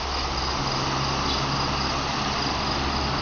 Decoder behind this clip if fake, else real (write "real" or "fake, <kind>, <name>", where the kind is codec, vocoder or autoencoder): real